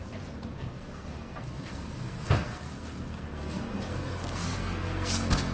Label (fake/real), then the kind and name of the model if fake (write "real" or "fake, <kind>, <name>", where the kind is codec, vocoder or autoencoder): fake, codec, SNAC